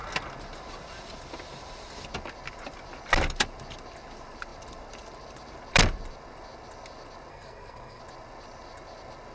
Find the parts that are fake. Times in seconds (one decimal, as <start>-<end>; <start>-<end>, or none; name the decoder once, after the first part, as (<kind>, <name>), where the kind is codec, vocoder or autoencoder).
7.3-8.0 (codec, SNAC)